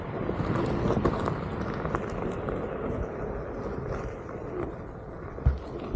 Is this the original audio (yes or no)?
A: yes